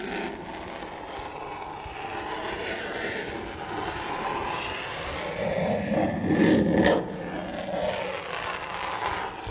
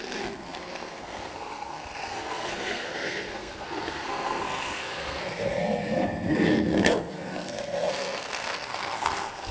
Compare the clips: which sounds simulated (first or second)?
second